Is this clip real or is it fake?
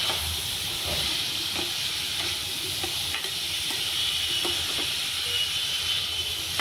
real